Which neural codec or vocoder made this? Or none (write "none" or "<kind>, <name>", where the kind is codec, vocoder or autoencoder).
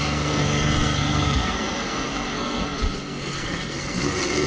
codec, SNAC